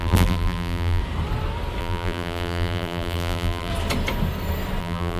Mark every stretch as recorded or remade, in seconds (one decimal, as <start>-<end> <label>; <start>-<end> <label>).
0.0-1.0 remade; 1.0-1.8 recorded; 1.8-3.7 remade; 3.7-4.8 recorded; 4.8-5.2 remade